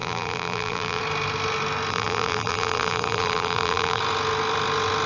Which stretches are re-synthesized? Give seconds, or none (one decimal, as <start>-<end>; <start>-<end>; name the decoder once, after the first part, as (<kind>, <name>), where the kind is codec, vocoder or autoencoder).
0.0-1.0 (vocoder, BigVGAN v2); 1.9-4.0